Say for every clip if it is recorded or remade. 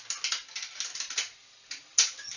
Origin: recorded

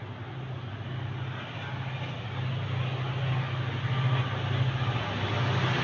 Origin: recorded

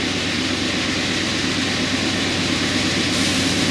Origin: recorded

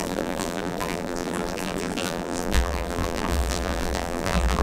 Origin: remade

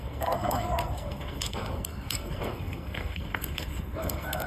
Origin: remade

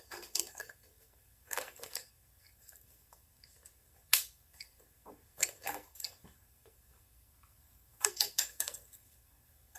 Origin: remade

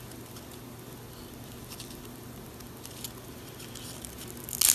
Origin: recorded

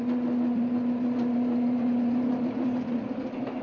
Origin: remade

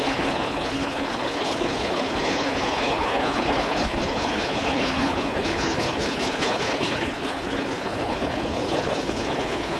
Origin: remade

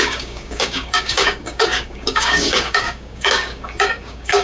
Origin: remade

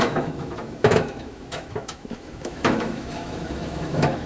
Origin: remade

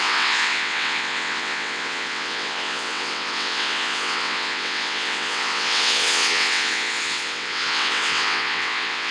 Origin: remade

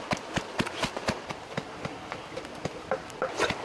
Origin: recorded